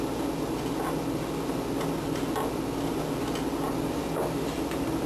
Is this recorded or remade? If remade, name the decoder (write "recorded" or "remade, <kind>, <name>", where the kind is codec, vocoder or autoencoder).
recorded